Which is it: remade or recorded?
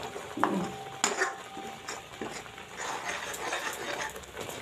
recorded